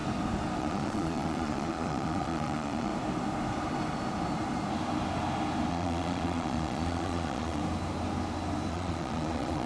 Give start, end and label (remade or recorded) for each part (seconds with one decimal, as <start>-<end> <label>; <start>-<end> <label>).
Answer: 0.0-0.6 recorded; 0.6-2.9 remade; 2.9-5.7 recorded; 5.7-7.6 remade; 7.6-8.7 recorded; 8.7-9.7 remade